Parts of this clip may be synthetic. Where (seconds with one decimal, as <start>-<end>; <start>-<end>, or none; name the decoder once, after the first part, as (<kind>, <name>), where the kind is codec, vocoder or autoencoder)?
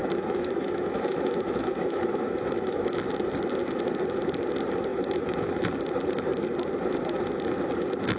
0.0-2.9 (autoencoder, DAC-VAE); 4.9-5.6